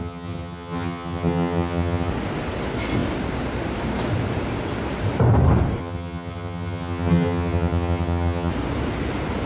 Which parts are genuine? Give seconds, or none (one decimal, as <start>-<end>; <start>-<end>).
2.1-5.8; 8.5-9.5